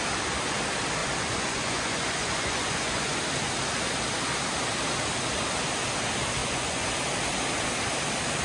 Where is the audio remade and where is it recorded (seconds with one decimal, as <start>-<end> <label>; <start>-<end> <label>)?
0.0-1.0 recorded; 1.0-3.2 remade; 3.2-6.4 recorded; 6.4-6.9 remade; 6.9-8.4 recorded